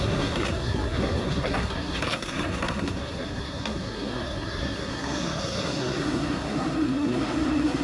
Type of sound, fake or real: fake